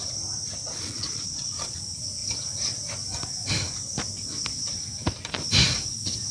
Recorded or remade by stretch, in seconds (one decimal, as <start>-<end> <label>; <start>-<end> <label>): 0.0-0.6 recorded; 0.6-1.8 remade; 1.8-6.3 recorded